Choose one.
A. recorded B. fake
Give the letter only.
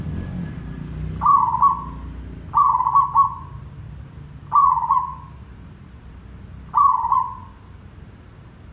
A